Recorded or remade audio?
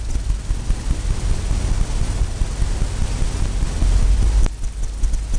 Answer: recorded